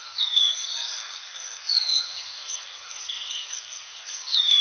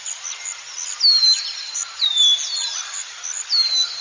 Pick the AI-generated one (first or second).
first